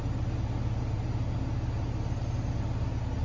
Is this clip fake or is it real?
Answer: real